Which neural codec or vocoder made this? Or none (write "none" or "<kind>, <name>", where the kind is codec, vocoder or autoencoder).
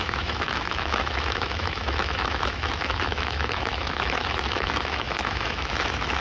autoencoder, DAC-VAE